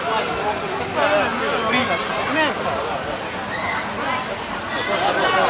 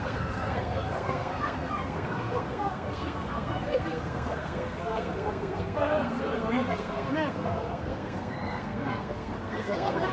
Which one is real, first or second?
first